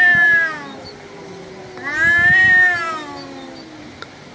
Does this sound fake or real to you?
real